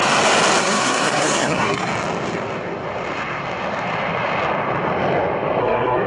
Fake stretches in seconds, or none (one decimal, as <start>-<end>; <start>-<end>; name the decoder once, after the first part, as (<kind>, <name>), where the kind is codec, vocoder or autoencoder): 0.6-1.9 (codec, SNAC); 5.6-6.1